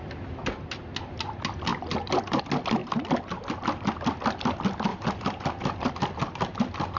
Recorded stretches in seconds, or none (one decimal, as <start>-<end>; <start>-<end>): 0.0-2.8; 3.6-4.9; 5.9-7.0

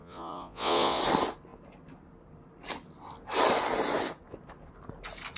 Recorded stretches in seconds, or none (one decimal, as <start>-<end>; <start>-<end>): 1.0-5.4

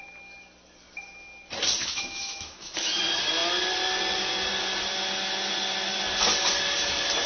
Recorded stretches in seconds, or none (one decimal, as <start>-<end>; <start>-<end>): 0.0-1.8; 3.0-7.3

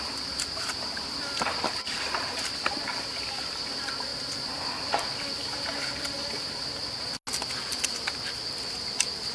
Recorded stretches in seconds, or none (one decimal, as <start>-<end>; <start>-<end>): 0.0-9.3

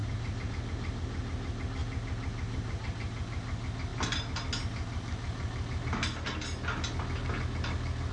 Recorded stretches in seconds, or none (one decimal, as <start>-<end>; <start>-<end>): 0.0-8.1